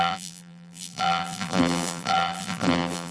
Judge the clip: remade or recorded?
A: remade